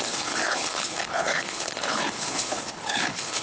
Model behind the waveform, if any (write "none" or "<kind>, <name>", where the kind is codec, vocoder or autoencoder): codec, HILCodec